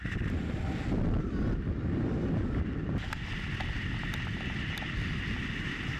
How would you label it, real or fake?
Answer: real